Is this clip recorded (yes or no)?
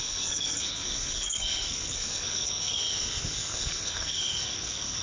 no